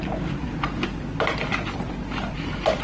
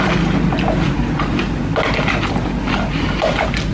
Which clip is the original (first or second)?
second